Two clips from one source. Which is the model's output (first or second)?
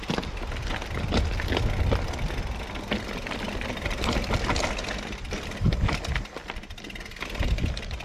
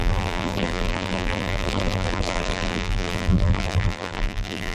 second